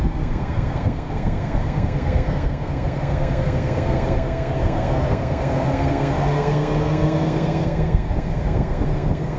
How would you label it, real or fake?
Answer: fake